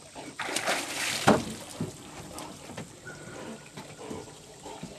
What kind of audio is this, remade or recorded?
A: remade